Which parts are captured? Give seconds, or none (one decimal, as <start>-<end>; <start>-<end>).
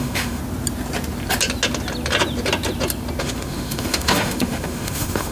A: 0.4-3.2